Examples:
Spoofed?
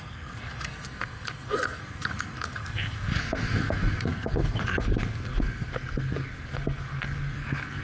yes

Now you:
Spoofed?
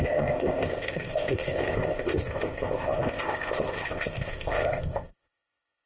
yes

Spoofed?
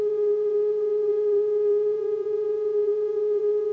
yes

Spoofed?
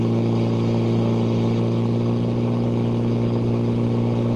no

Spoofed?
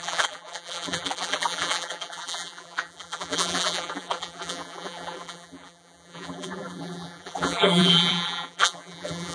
yes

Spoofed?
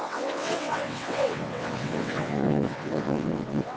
yes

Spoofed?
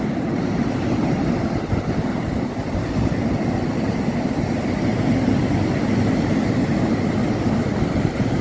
no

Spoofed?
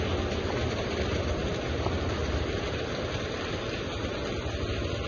no